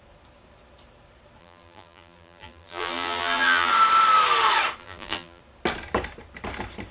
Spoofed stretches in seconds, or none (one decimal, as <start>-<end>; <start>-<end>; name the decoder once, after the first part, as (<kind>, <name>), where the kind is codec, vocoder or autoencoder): 1.4-3.7 (vocoder, BigVGAN v2); 4.8-5.4

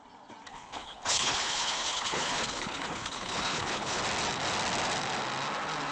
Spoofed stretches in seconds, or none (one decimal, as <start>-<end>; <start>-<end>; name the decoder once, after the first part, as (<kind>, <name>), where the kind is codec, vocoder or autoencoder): 0.5-4.0 (codec, HILCodec)